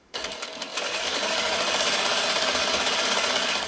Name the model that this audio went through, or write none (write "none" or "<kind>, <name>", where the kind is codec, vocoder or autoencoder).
codec, DAC